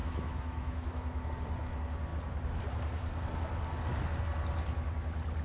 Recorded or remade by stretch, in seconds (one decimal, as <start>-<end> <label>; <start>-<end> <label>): 0.0-1.3 remade; 1.3-5.4 recorded